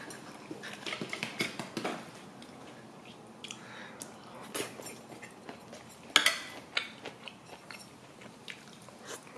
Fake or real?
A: real